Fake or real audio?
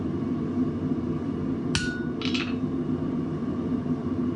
real